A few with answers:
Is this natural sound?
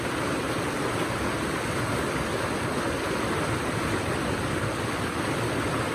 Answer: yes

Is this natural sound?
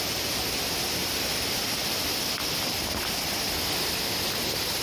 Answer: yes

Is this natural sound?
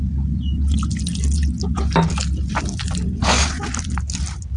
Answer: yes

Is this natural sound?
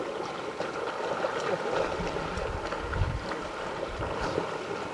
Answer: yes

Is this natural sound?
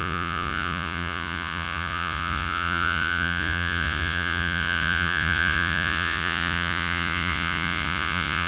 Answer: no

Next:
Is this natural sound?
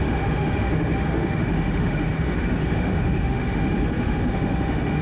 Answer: no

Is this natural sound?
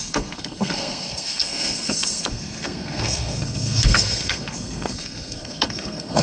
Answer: no